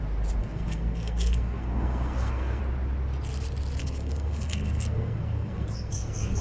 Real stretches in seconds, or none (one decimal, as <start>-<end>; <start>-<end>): 0.0-0.4; 2.6-3.8